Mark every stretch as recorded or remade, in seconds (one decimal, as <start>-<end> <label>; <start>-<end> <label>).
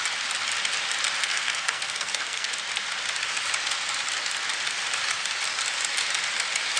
0.0-1.2 recorded; 1.2-2.5 remade; 2.5-6.8 recorded